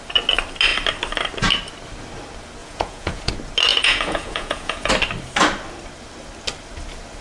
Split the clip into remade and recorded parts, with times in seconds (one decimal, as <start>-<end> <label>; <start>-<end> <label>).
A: 0.0-2.6 recorded; 2.6-3.3 remade; 3.3-3.7 recorded; 3.7-4.9 remade; 4.9-7.2 recorded